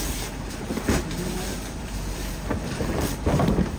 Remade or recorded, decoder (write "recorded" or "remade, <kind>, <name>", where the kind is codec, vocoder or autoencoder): remade, vocoder, BigVGAN v2